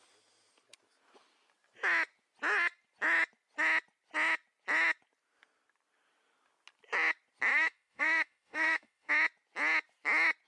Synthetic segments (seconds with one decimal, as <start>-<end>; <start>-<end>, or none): 7.5-9.1